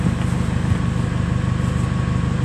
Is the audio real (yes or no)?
yes